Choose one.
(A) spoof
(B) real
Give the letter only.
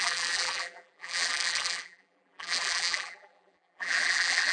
A